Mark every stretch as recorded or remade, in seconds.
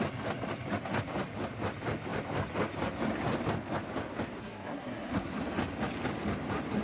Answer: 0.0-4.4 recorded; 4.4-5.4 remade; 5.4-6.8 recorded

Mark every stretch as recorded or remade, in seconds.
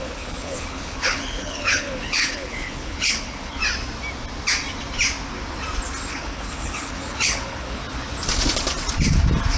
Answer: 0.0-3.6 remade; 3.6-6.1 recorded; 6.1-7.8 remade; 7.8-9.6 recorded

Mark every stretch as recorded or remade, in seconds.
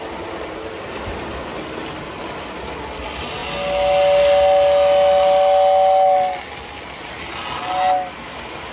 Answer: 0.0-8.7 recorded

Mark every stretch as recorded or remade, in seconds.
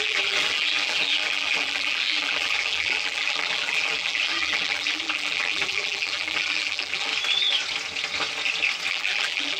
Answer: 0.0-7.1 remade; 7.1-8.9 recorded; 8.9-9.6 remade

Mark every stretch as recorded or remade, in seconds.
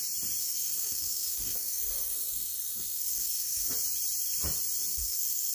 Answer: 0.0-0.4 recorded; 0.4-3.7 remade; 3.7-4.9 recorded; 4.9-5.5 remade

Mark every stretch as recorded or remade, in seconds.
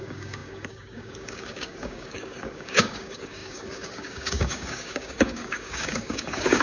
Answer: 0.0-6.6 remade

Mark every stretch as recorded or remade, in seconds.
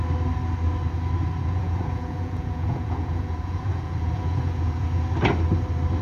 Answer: 0.0-1.4 recorded; 1.4-5.0 remade; 5.0-6.0 recorded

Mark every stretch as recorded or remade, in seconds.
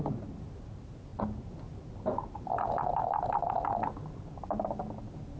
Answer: 0.0-5.4 recorded